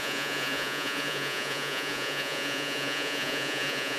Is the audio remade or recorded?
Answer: remade